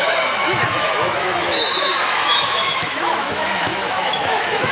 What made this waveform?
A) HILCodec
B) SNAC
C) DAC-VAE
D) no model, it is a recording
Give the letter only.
C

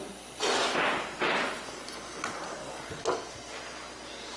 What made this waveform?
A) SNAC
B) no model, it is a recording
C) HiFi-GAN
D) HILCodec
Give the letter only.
B